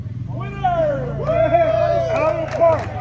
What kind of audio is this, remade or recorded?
remade